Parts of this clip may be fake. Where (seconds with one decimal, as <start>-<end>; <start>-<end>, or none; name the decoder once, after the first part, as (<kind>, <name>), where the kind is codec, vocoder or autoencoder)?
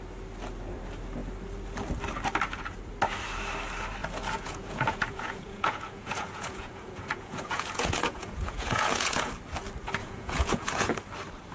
4.0-9.3 (vocoder, Vocos); 10.0-10.9